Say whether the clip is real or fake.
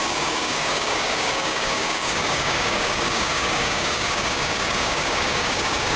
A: fake